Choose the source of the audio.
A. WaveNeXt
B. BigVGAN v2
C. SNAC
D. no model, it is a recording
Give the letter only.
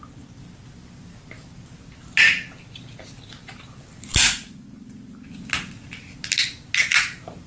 D